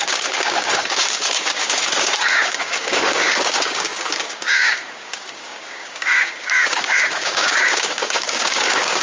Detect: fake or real fake